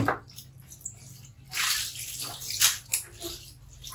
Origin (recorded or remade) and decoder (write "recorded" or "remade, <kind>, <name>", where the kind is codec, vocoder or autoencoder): recorded